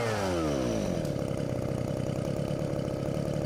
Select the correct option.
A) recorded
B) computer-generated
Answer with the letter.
A